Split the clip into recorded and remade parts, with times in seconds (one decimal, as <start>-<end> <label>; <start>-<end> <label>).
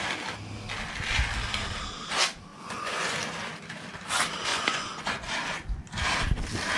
0.0-2.5 recorded; 2.5-3.2 remade; 3.2-4.5 recorded; 4.5-5.8 remade; 5.8-6.8 recorded